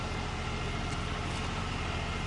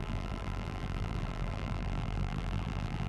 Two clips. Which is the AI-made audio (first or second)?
second